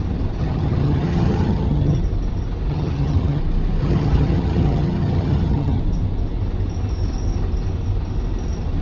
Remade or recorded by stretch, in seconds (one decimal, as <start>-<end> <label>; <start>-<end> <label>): 0.0-0.4 recorded; 0.4-2.0 remade; 2.0-2.7 recorded; 2.7-3.4 remade; 3.4-3.8 recorded; 3.8-5.8 remade; 5.8-8.8 recorded